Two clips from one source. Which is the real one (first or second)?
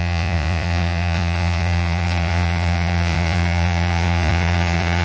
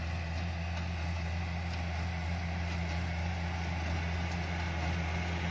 second